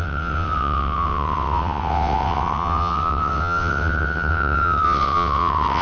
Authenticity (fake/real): fake